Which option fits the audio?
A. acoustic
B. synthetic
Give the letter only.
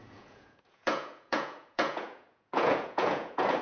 B